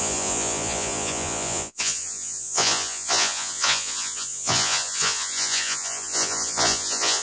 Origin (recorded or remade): remade